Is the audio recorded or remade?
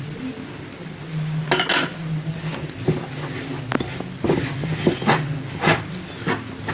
recorded